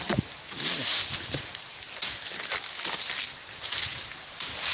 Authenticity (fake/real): real